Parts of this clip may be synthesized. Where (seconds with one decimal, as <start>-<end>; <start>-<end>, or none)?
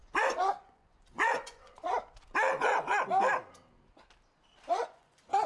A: 0.0-1.9; 4.7-5.5